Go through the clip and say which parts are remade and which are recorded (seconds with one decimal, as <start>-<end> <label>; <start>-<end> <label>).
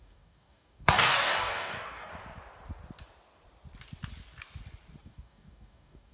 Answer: 0.0-2.1 remade; 2.1-5.0 recorded; 5.0-6.1 remade